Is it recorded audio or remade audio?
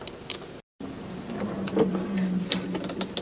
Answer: recorded